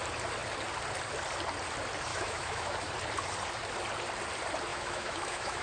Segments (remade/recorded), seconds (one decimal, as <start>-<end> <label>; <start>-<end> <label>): 0.0-2.1 recorded; 2.1-2.9 remade; 2.9-4.7 recorded; 4.7-5.6 remade

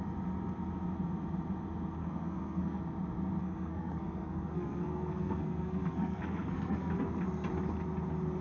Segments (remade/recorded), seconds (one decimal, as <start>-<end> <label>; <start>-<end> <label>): 0.0-2.0 recorded; 2.0-2.8 remade; 2.8-3.4 recorded; 3.4-6.9 remade; 6.9-8.4 recorded

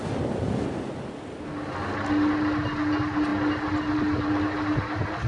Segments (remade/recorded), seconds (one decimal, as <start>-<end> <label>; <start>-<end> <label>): 0.0-5.3 recorded

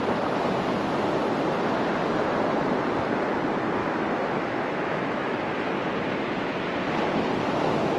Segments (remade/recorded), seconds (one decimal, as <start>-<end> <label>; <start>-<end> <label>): 0.0-3.8 recorded; 3.8-5.7 remade; 5.7-8.0 recorded

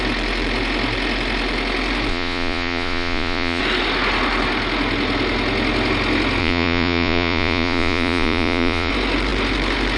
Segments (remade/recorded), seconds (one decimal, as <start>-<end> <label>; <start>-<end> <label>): 0.0-2.1 recorded; 2.1-3.6 remade; 3.6-6.4 recorded; 6.4-8.9 remade; 8.9-10.0 recorded

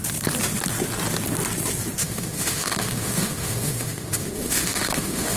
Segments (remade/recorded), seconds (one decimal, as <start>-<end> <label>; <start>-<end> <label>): 0.0-2.0 recorded; 2.0-5.4 remade

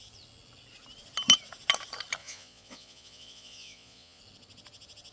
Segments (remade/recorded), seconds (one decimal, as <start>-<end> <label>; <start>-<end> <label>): 0.0-2.2 recorded; 2.2-4.2 remade; 4.2-5.1 recorded